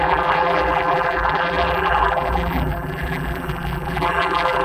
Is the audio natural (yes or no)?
no